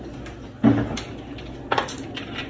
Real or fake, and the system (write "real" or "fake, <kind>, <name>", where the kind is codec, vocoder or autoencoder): real